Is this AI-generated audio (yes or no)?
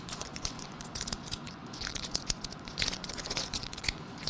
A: yes